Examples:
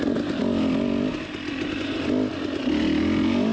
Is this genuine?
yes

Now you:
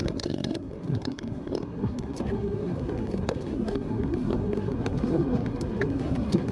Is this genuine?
no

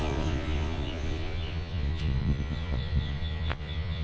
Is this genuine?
no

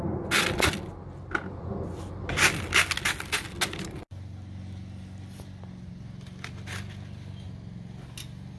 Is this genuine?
yes